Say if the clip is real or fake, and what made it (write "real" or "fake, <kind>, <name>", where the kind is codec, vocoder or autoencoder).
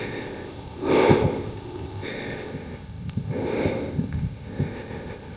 fake, codec, ZipCodec